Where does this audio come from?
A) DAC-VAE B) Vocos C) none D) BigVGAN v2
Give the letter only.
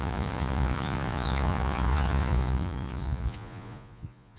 B